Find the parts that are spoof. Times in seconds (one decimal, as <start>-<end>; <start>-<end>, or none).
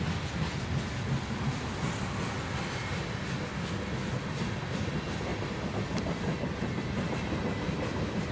none